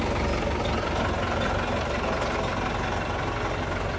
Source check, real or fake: real